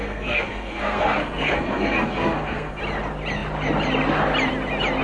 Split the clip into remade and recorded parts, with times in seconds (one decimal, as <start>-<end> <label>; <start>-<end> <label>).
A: 0.0-2.8 remade; 2.8-5.0 recorded

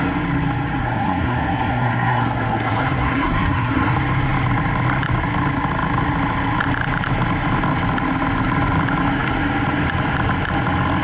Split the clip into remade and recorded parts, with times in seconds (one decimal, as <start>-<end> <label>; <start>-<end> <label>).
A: 0.0-0.8 recorded; 0.8-3.9 remade; 3.9-11.0 recorded